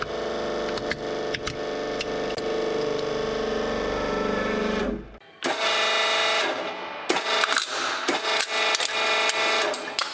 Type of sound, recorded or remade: recorded